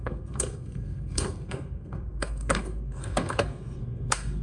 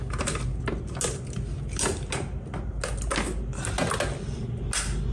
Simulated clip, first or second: first